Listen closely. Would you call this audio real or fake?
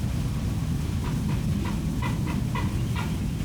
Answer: real